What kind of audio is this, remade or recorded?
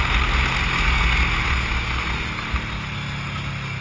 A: recorded